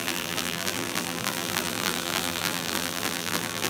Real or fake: fake